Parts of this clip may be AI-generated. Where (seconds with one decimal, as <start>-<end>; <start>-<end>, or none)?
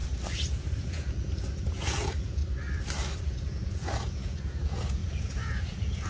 0.8-2.4; 3.2-6.1